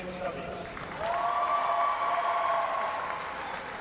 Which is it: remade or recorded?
recorded